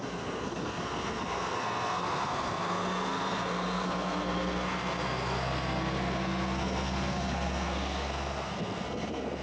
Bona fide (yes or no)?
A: no